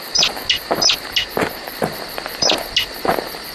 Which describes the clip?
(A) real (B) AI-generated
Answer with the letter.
A